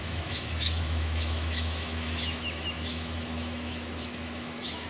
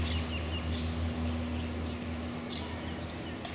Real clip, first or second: second